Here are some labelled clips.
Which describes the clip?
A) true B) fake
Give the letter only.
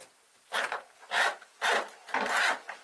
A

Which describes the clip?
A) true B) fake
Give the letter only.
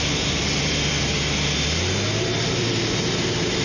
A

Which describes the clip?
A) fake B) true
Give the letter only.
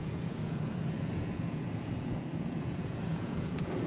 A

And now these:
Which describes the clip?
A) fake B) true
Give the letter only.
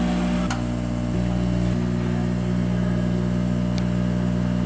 B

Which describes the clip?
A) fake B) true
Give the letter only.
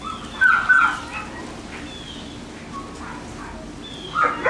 B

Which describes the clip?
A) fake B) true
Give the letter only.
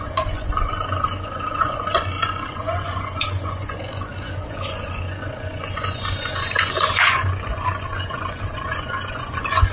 A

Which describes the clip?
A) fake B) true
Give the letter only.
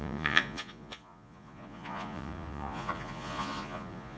A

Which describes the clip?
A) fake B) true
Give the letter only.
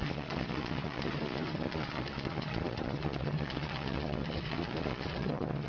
A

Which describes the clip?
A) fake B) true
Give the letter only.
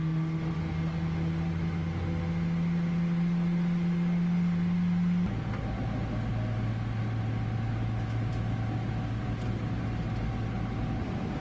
B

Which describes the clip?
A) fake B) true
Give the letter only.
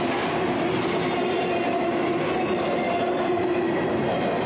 B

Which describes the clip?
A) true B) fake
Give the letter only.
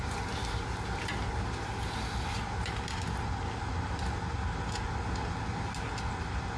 A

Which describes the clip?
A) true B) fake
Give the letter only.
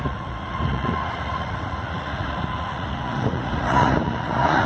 B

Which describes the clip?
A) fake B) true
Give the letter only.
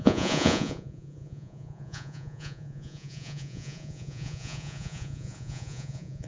A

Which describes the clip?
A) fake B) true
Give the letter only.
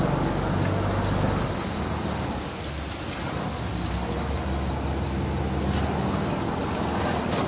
B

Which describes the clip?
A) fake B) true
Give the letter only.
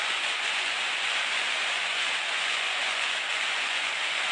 A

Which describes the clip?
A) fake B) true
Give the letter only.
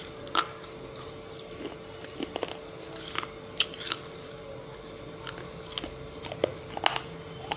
B